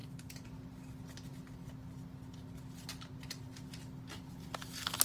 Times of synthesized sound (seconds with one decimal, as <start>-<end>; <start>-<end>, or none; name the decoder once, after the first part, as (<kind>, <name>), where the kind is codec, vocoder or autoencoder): 0.0-0.5 (vocoder, BigVGAN v2)